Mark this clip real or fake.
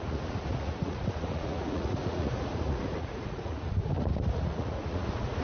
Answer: fake